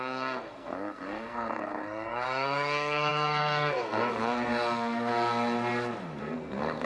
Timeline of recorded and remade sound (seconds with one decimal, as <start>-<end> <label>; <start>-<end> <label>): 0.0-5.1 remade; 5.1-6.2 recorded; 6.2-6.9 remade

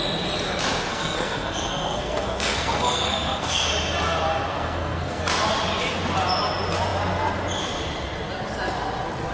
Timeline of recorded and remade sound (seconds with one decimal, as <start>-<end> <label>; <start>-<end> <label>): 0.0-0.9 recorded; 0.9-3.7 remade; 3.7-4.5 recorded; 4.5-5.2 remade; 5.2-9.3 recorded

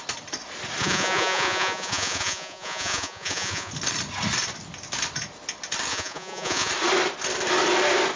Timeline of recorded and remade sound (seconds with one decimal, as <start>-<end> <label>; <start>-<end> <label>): 0.0-0.8 recorded; 0.8-3.7 remade; 3.7-5.9 recorded; 5.9-6.7 remade; 6.7-8.2 recorded

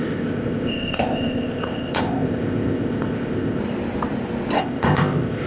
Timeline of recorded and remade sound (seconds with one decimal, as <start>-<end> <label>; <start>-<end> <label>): 0.0-3.6 remade; 3.6-4.6 recorded; 4.6-5.5 remade

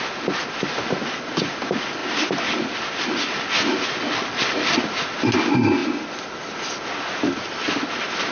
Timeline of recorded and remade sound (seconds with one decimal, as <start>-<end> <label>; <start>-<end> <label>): 0.0-8.3 recorded

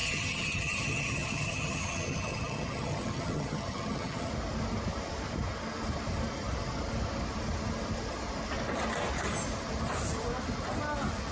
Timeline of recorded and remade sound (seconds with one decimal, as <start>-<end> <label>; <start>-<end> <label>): 0.0-4.3 remade; 4.3-11.3 recorded

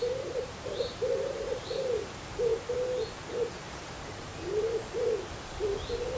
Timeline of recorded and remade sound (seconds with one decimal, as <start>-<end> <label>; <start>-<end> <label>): 0.0-2.5 remade; 2.5-3.5 recorded; 3.5-4.3 remade; 4.3-6.2 recorded

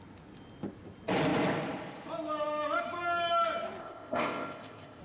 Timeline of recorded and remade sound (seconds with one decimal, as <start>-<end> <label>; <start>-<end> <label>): 0.0-3.8 recorded; 3.8-5.0 remade